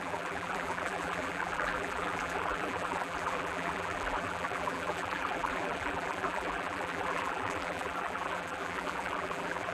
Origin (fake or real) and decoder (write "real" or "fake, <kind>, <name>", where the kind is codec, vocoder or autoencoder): fake, vocoder, BigVGAN v2